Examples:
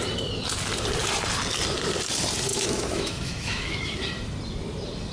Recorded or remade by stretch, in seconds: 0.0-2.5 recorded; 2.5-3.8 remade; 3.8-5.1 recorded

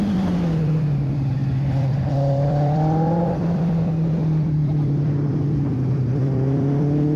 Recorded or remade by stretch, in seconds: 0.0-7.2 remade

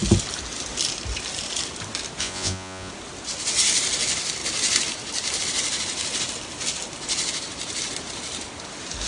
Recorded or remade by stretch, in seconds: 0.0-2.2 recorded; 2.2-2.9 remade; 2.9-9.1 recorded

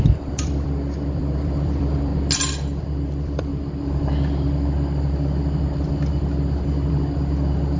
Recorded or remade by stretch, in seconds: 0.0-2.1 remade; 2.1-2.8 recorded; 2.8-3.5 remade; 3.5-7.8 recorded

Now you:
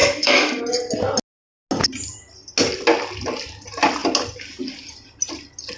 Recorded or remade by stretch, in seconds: 0.0-0.6 remade; 0.6-5.8 recorded